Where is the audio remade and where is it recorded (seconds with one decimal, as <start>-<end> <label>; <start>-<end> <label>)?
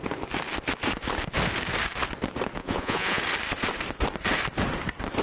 0.0-2.6 recorded; 2.6-3.2 remade; 3.2-5.2 recorded